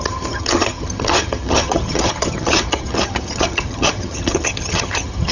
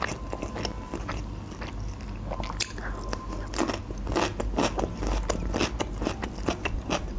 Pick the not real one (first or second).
first